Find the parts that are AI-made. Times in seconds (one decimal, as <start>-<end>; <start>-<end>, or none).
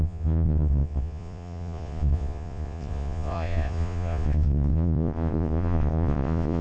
0.0-6.6